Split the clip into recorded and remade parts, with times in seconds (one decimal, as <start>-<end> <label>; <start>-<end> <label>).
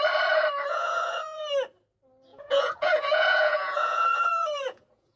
0.0-0.7 recorded; 0.7-1.4 remade; 1.4-2.3 recorded; 2.3-5.2 remade